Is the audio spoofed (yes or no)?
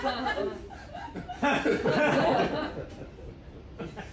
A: no